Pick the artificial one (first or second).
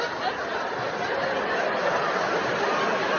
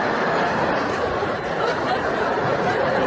second